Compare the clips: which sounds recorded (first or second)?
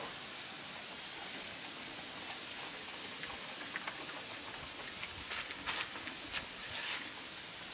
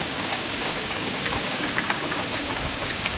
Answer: first